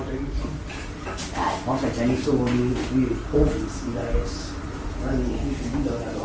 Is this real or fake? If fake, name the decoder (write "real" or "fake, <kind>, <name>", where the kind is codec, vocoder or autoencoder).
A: real